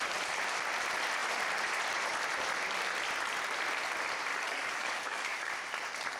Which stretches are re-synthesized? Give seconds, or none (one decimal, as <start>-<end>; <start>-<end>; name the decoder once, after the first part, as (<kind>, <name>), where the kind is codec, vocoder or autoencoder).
4.3-5.5 (codec, DAC)